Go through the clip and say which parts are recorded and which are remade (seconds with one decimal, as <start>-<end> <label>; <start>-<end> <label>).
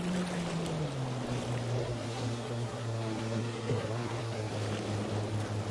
0.0-1.8 recorded; 1.8-4.5 remade; 4.5-5.7 recorded